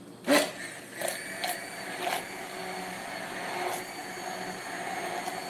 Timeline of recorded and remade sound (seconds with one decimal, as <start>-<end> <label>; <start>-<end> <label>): 0.0-5.5 recorded